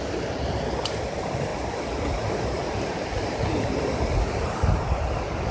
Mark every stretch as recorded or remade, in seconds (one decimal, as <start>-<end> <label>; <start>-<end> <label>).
0.0-5.5 recorded